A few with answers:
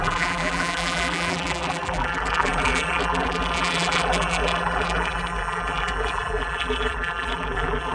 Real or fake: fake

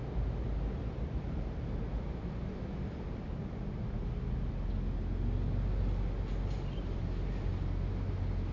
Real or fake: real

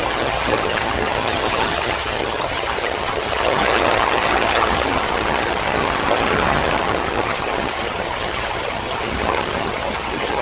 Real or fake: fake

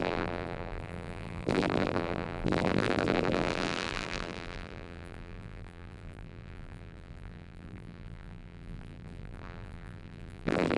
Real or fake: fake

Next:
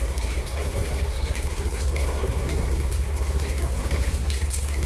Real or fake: fake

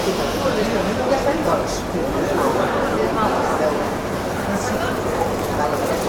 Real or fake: real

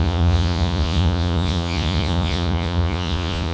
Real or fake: fake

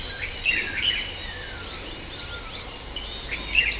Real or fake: real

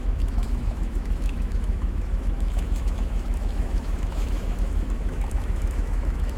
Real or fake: fake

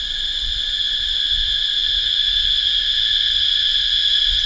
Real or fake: real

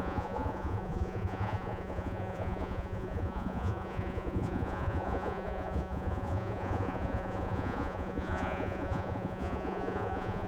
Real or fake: fake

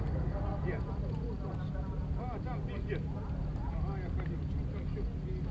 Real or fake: real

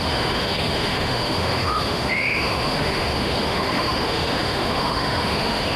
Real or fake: fake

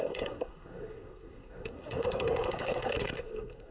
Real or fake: fake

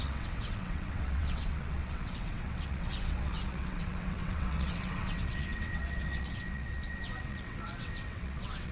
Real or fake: fake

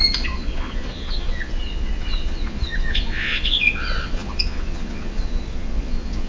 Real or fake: fake